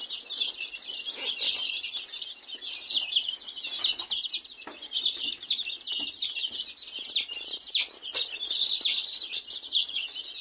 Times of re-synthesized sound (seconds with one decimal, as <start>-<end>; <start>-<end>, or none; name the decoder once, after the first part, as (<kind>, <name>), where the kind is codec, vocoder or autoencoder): none